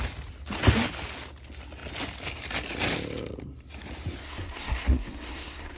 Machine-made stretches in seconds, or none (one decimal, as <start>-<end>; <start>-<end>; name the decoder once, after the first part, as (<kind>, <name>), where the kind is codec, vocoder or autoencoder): 4.2-5.8 (codec, SNAC)